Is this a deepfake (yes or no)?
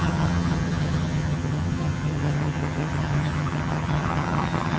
yes